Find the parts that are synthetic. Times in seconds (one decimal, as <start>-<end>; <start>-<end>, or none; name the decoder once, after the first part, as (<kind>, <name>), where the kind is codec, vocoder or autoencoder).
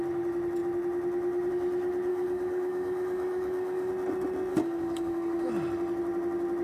2.1-3.9 (codec, DAC); 4.5-5.5